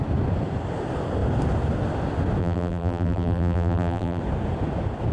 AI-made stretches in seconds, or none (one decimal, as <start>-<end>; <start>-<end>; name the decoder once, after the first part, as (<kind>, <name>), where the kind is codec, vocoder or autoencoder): 2.4-4.2 (vocoder, BigVGAN v2)